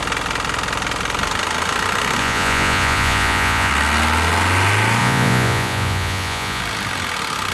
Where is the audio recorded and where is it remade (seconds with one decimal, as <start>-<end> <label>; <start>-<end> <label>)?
0.0-2.2 recorded; 2.2-3.7 remade; 3.7-5.0 recorded; 5.0-6.6 remade; 6.6-7.5 recorded